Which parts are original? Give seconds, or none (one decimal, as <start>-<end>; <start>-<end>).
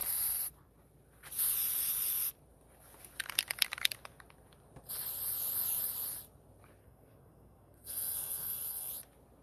0.0-6.8; 8.9-9.4